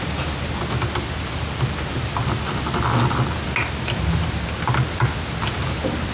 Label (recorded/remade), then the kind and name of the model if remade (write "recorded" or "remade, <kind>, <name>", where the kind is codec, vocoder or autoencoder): recorded